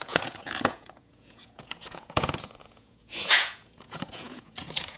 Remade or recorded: remade